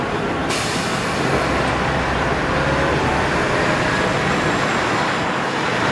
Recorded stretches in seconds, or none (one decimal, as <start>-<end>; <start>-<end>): 0.0-0.4; 1.8-5.9